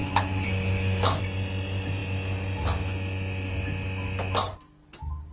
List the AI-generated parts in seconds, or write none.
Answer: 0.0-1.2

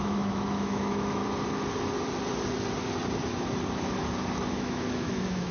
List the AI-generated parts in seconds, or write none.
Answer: 0.0-1.2; 4.5-5.5